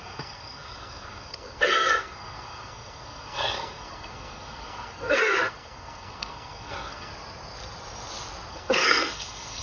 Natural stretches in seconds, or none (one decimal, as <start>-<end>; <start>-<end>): 7.1-8.5